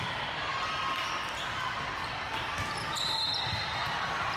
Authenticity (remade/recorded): remade